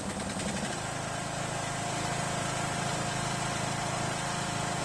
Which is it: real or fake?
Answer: real